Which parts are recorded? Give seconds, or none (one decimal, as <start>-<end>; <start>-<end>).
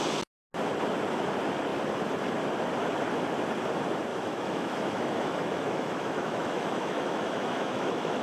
0.0-4.1